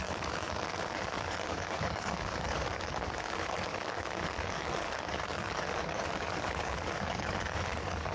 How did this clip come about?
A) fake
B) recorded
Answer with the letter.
A